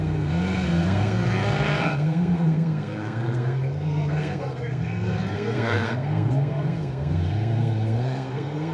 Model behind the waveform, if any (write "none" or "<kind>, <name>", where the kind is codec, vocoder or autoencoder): codec, SNAC